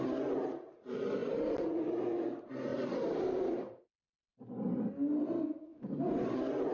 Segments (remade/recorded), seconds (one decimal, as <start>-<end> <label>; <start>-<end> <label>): 0.0-1.2 recorded; 1.2-1.8 remade; 1.8-2.7 recorded; 2.7-4.9 remade; 4.9-5.7 recorded; 5.7-6.7 remade